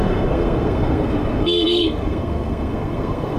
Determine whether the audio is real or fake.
fake